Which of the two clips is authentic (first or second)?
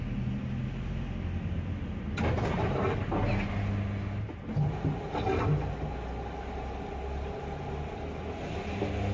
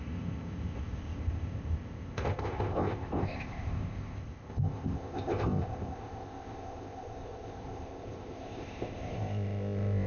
first